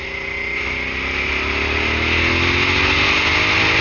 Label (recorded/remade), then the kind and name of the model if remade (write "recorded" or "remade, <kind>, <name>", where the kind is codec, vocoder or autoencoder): recorded